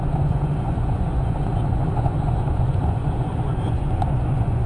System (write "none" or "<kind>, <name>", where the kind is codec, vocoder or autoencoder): vocoder, Vocos